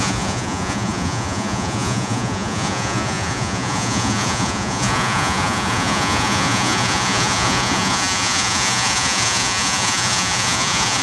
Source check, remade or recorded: remade